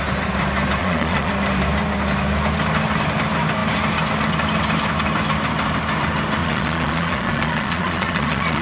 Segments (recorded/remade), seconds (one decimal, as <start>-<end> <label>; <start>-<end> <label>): 0.0-0.8 recorded; 0.8-1.3 remade; 1.3-6.4 recorded; 6.4-8.6 remade